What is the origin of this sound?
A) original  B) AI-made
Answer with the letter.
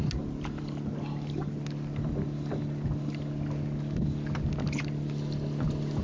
A